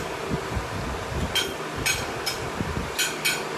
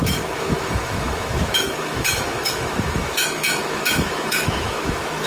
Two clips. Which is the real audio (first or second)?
first